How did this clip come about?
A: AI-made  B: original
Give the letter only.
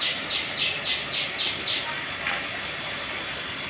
B